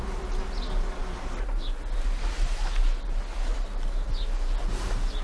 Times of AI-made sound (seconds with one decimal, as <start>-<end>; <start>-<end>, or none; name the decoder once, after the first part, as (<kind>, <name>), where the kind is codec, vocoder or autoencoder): none